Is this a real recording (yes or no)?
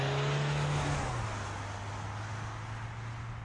yes